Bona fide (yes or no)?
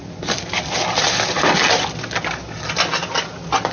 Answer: yes